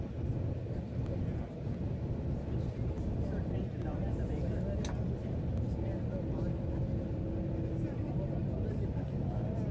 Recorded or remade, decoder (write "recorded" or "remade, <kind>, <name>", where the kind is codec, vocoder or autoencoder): recorded